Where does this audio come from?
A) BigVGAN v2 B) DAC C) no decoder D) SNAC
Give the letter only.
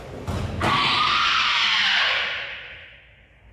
C